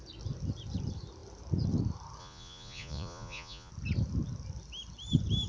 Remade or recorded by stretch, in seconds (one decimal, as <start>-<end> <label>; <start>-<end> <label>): 0.0-2.2 recorded; 2.2-3.7 remade; 3.7-5.5 recorded